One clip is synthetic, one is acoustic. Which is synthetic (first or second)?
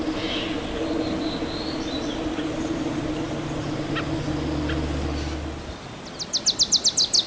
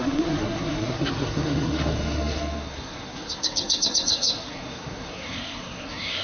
second